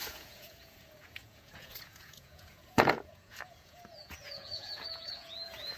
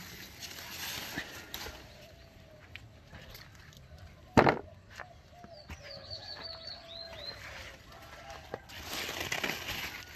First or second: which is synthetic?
first